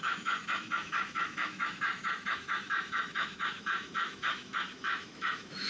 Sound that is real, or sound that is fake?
fake